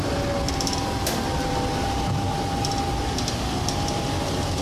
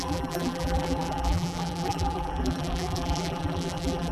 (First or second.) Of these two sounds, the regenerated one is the second